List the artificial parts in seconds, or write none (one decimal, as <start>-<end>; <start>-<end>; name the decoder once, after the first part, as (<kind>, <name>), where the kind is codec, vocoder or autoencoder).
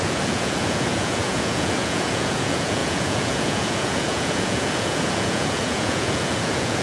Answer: 0.0-6.8 (vocoder, Vocos)